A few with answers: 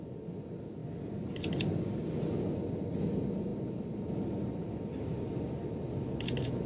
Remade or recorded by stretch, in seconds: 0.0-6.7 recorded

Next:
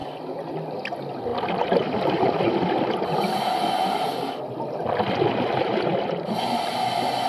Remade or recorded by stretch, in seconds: 0.0-1.3 remade; 1.3-2.5 recorded; 2.5-5.9 remade; 5.9-6.7 recorded; 6.7-7.3 remade

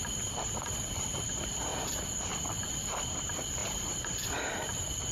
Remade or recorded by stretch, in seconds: 0.0-1.7 remade; 1.7-2.8 recorded; 2.8-5.1 remade

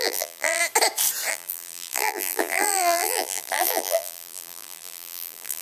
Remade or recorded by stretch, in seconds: 0.0-0.6 remade; 0.6-1.3 recorded; 1.3-5.6 remade

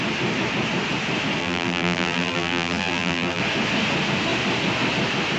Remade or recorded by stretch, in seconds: 0.0-1.4 recorded; 1.4-3.4 remade; 3.4-5.4 recorded